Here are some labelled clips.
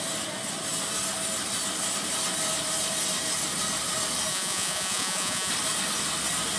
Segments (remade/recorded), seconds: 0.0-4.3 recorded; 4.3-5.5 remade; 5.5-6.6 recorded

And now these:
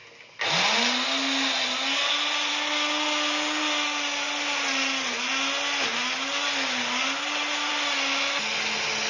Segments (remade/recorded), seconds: 0.0-9.1 recorded

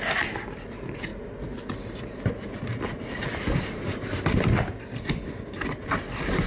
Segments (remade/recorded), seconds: 0.0-6.5 recorded